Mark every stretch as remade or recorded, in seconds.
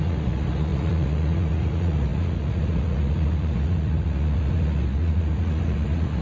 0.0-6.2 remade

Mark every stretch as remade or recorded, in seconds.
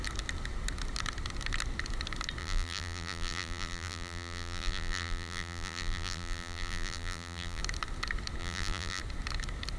0.0-2.4 recorded; 2.4-7.6 remade; 7.6-8.4 recorded; 8.4-9.0 remade; 9.0-9.8 recorded